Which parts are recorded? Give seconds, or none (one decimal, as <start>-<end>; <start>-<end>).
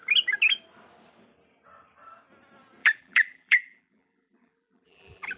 0.0-2.8